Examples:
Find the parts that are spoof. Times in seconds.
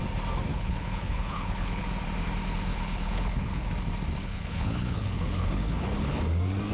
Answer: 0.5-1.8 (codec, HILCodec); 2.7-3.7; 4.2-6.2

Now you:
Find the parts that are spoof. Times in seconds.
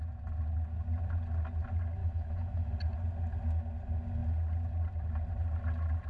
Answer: 2.0-2.7 (autoencoder, DAC-VAE)